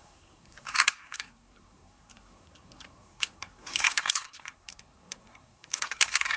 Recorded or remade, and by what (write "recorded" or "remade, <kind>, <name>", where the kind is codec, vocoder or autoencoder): remade, codec, SNAC